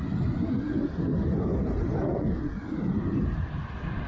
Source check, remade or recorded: recorded